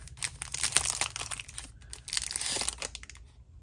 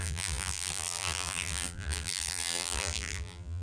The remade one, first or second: second